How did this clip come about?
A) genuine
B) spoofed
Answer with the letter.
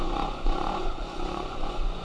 B